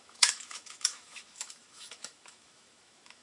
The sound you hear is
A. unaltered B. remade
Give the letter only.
B